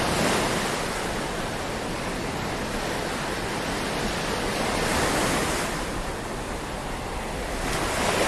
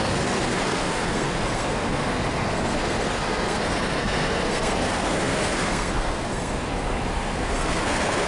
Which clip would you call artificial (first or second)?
second